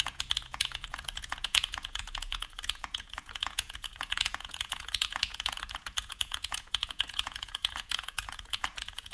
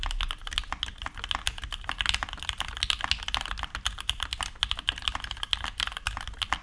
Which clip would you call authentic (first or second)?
second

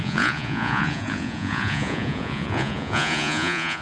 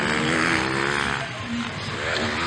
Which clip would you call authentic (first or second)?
second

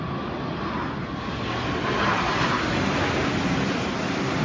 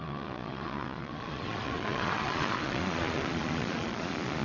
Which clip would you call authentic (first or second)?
first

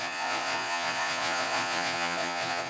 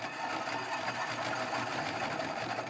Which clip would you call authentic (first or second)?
second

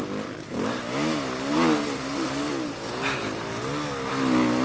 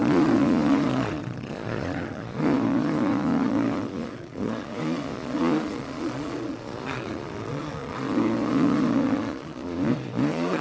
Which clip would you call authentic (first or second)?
first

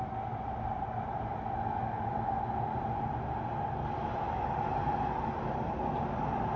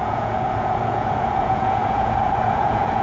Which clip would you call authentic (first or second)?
first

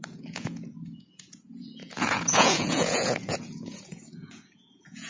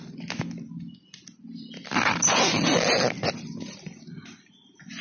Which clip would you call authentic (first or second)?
second